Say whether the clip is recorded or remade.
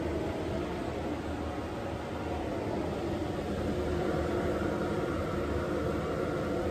recorded